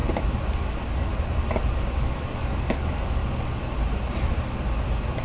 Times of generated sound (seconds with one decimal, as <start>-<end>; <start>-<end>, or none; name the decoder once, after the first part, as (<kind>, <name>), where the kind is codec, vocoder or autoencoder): 0.6-1.1 (codec, DAC); 1.9-3.2